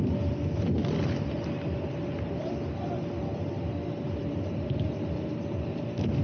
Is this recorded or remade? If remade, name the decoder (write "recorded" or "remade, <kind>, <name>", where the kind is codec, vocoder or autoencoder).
recorded